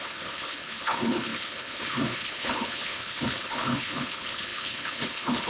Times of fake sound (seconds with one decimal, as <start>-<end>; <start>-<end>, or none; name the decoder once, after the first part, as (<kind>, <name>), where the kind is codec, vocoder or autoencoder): 0.0-5.5 (codec, HILCodec)